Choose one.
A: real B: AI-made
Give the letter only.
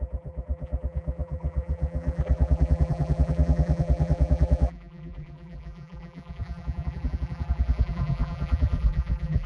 B